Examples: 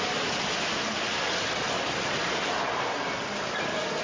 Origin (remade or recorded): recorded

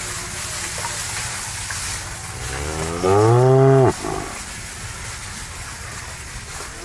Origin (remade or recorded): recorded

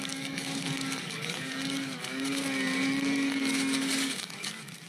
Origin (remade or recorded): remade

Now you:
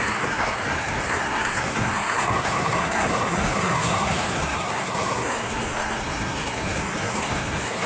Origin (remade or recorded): remade